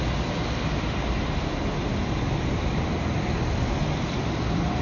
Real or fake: real